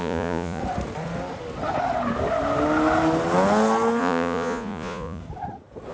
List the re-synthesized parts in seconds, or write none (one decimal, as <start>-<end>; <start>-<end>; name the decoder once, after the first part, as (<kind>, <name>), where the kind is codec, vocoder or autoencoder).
0.0-0.6 (vocoder, Vocos); 4.0-5.2